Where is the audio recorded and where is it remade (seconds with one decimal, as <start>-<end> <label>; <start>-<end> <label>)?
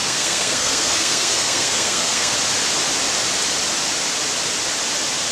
0.0-2.3 remade; 2.3-5.3 recorded